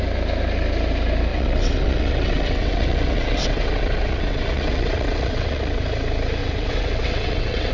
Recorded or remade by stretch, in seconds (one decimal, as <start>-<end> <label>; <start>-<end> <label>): 0.0-1.3 recorded; 1.3-5.8 remade; 5.8-6.4 recorded; 6.4-7.7 remade